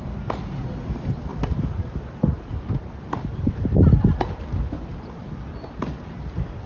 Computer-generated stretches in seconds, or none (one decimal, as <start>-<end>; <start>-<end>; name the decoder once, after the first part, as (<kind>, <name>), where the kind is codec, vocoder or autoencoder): none